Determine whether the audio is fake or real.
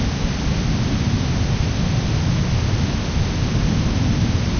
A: real